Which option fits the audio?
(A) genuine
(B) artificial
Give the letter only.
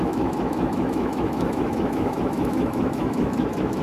B